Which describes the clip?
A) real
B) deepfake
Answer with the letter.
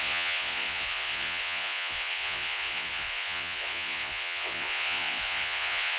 B